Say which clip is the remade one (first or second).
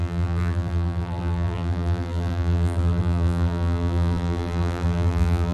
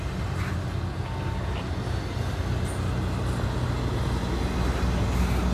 first